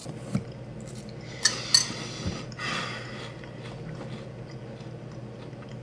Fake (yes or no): no